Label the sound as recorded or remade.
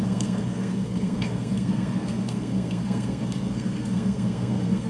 remade